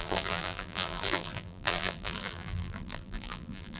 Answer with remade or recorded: remade